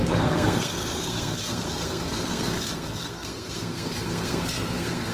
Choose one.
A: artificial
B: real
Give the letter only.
A